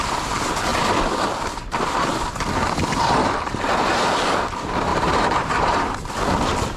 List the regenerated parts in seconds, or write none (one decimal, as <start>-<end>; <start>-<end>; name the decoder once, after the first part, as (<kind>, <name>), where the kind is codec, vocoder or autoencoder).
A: 4.9-6.1 (vocoder, BigVGAN v2)